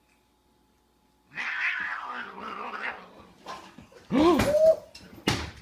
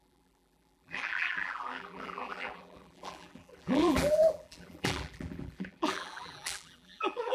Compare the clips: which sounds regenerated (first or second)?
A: second